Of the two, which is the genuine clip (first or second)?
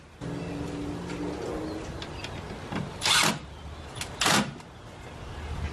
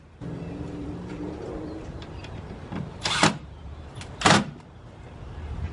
first